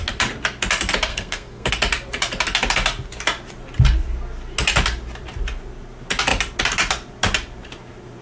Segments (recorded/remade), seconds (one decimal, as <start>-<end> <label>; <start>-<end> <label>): 0.0-1.1 recorded; 1.1-1.7 remade; 1.7-8.2 recorded